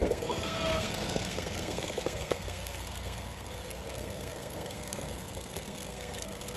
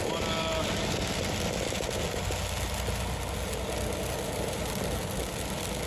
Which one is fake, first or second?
first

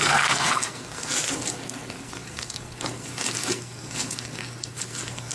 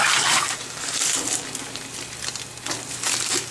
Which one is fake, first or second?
first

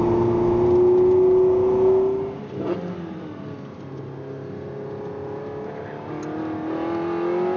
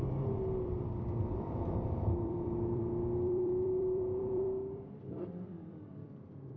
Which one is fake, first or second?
second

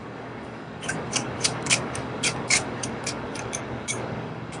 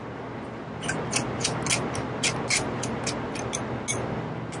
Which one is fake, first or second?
first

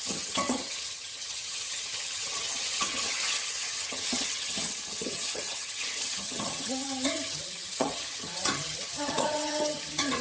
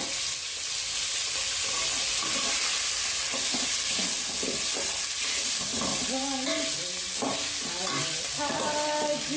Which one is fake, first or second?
first